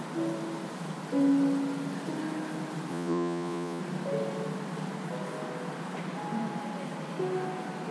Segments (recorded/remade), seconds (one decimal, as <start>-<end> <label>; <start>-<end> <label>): 0.0-2.9 recorded; 2.9-3.8 remade; 3.8-7.9 recorded